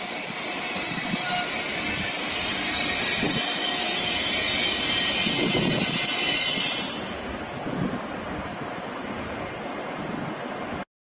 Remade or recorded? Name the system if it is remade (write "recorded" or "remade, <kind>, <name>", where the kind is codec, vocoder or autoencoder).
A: recorded